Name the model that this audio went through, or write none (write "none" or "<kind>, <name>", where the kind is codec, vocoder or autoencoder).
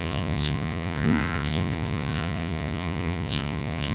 vocoder, Vocos